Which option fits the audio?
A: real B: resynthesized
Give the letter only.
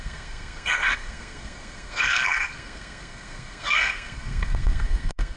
B